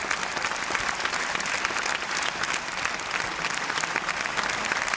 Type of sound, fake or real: real